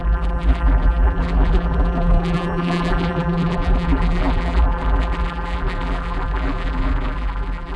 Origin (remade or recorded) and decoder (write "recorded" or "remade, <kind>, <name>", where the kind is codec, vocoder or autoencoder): remade, vocoder, BigVGAN v2